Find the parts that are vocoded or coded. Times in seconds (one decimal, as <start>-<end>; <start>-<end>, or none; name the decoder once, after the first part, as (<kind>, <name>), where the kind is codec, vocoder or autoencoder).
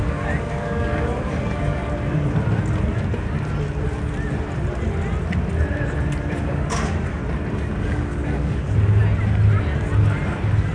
0.0-1.8 (codec, DAC); 6.4-7.2; 7.8-9.0